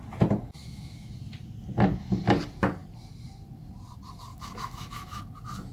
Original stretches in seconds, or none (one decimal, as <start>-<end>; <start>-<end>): 0.0-0.6; 1.1-4.3; 5.2-5.7